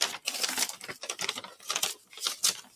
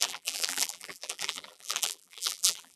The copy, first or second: second